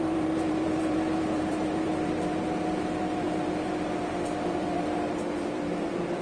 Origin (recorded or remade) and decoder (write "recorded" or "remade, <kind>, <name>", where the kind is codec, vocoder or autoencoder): remade, vocoder, BigVGAN v2